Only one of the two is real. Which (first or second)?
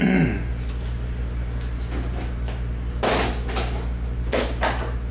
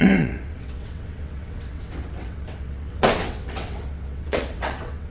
first